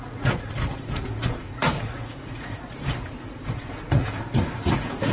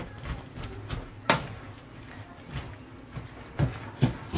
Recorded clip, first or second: second